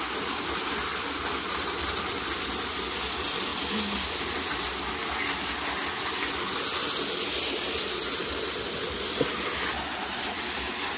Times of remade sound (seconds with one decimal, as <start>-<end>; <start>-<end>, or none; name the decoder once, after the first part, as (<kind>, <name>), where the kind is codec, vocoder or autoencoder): none